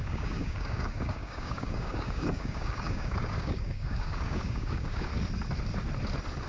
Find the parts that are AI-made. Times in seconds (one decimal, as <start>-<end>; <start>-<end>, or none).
0.0-5.1